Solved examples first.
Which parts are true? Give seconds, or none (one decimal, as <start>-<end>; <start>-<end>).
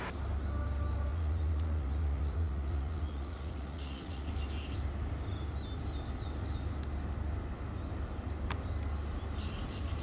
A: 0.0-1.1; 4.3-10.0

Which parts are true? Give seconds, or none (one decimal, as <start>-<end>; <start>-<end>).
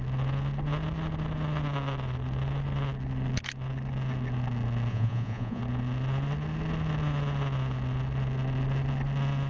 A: 0.0-4.9; 5.6-9.5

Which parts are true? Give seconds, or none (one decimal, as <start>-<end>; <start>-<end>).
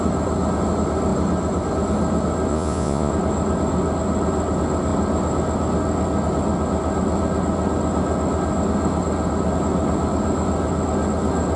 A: 0.0-2.5; 3.1-11.6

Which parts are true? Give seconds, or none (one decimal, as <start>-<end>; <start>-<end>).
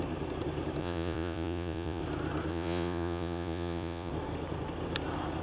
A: 0.0-0.8; 2.0-2.5; 4.1-5.4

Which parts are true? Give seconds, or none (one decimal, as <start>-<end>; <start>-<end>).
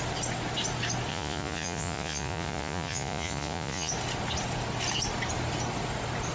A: 0.0-1.1; 3.9-6.3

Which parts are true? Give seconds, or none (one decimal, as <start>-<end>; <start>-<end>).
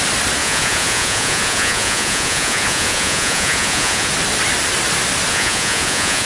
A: 0.0-0.4; 4.1-5.3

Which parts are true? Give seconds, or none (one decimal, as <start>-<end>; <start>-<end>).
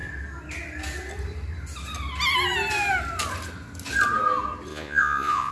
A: 0.0-4.7